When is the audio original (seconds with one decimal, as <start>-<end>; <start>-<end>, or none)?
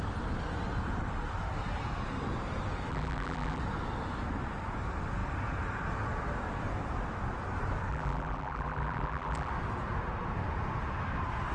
0.0-2.9; 3.6-7.9; 9.5-11.5